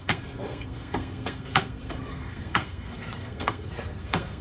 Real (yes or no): no